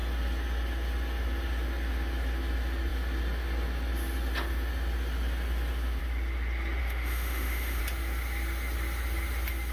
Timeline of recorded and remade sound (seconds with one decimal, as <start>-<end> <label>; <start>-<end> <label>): 0.0-6.8 recorded; 6.8-7.8 remade; 7.8-9.7 recorded